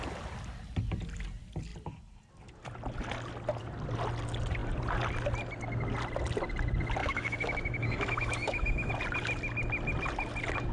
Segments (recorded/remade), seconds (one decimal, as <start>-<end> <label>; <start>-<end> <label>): 0.0-7.0 recorded; 7.0-8.9 remade; 8.9-10.7 recorded